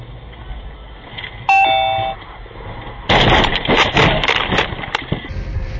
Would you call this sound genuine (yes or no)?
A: yes